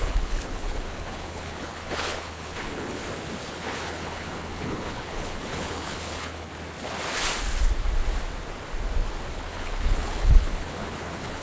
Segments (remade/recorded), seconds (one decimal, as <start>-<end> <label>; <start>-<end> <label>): 0.0-3.0 remade; 3.0-3.5 recorded; 3.5-6.5 remade; 6.5-9.3 recorded; 9.3-11.4 remade